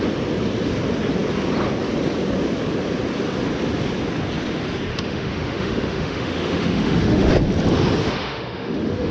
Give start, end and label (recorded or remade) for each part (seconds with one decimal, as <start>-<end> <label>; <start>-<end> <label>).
0.0-4.9 recorded; 4.9-7.3 remade; 7.3-8.0 recorded; 8.0-9.1 remade